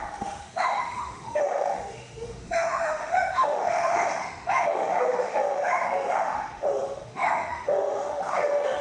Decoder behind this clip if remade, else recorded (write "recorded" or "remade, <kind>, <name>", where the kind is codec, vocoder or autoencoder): remade, autoencoder, DAC-VAE